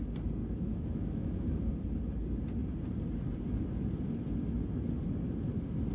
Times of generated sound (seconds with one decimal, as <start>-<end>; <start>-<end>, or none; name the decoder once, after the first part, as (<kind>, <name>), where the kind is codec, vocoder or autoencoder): 0.4-1.7 (autoencoder, DAC-VAE)